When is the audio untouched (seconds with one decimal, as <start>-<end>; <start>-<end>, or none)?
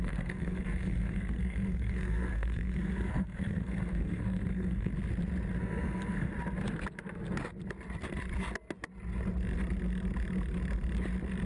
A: 4.9-5.6; 6.3-11.5